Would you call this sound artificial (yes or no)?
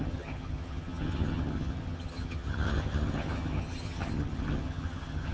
yes